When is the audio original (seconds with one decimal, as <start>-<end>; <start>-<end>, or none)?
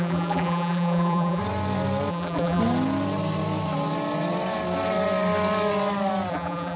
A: 1.4-2.1; 2.6-6.3